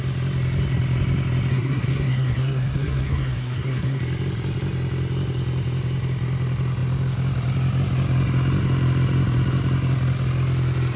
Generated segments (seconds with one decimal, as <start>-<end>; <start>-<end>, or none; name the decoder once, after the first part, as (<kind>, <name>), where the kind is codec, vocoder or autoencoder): 1.5-4.0 (codec, SNAC)